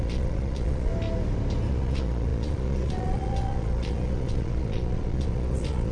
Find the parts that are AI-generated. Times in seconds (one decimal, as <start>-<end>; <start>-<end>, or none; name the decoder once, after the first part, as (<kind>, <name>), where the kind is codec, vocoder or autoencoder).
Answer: 0.0-0.9 (vocoder, Vocos); 1.7-5.9